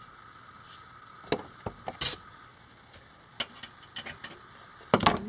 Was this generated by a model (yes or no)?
no